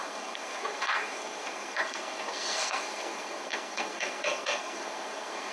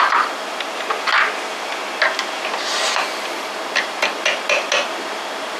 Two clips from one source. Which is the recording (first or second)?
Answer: second